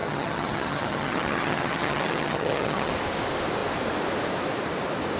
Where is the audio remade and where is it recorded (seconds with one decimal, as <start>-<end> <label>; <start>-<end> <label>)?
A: 0.0-2.9 remade; 2.9-5.2 recorded